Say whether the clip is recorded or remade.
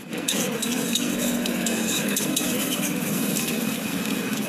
remade